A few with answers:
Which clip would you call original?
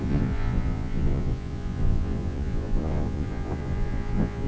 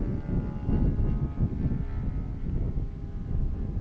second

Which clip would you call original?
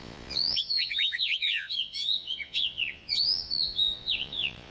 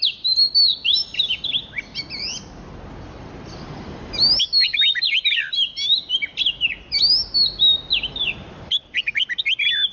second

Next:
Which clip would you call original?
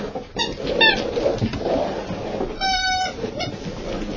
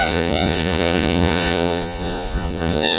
first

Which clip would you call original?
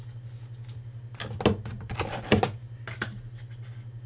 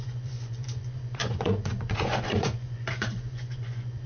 first